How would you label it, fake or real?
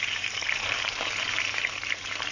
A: fake